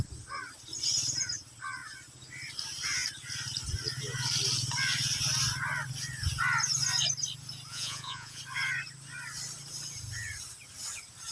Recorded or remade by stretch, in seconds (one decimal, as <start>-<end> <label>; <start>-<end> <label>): 0.0-7.7 recorded; 7.7-8.4 remade; 8.4-11.3 recorded